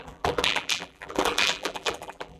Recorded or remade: remade